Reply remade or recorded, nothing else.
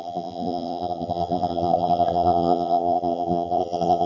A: remade